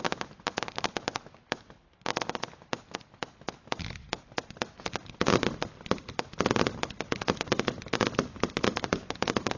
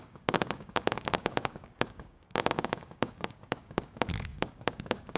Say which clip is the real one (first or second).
first